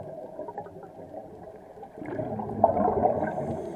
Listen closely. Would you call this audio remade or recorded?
recorded